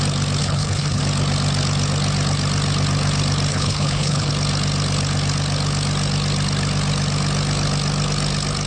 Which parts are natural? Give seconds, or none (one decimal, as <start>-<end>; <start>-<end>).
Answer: 0.0-0.4; 1.0-3.5; 4.3-8.7